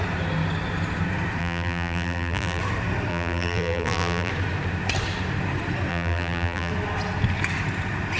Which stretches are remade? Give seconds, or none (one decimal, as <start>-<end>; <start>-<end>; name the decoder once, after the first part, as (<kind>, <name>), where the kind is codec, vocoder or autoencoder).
1.4-2.6 (vocoder, BigVGAN v2); 3.1-4.3; 5.9-6.7